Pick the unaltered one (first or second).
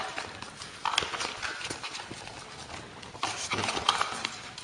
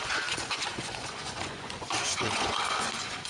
first